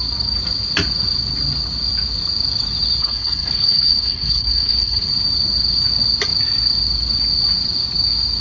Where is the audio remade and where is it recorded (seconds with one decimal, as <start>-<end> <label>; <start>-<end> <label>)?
0.0-3.0 recorded; 3.0-5.1 remade; 5.1-8.4 recorded